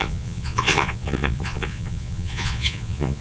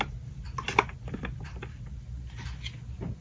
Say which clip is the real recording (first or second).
second